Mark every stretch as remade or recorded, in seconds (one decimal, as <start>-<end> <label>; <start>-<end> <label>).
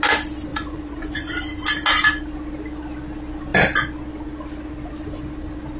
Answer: 0.0-0.5 recorded; 0.5-1.4 remade; 1.4-5.8 recorded